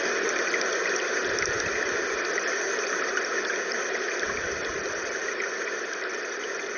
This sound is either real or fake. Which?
real